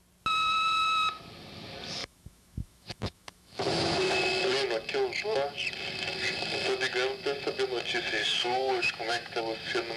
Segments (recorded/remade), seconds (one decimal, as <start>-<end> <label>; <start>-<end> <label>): 0.0-2.0 recorded; 2.0-4.1 remade; 4.1-8.2 recorded; 8.2-9.4 remade; 9.4-10.0 recorded